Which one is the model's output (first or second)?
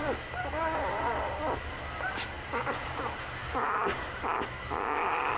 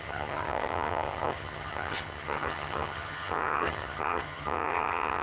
second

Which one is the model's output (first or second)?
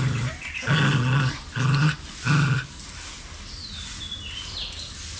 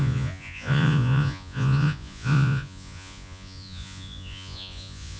second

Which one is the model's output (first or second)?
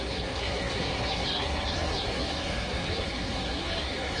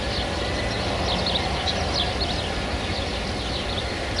first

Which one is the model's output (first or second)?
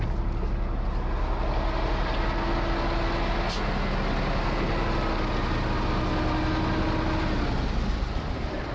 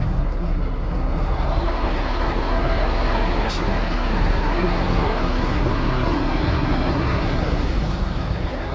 second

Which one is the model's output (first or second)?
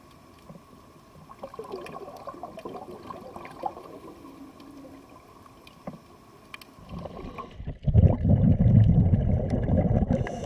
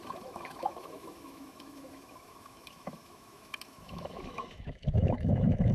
second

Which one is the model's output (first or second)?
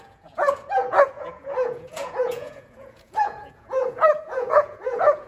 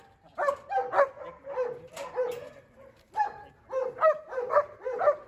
first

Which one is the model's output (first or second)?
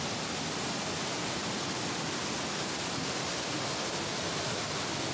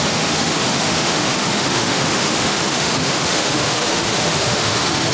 second